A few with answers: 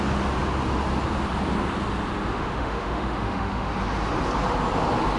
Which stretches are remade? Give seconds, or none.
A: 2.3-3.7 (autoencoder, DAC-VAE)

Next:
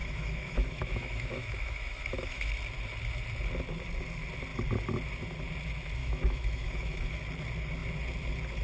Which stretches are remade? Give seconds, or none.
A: 0.0-2.5 (autoencoder, DAC-VAE); 6.0-7.1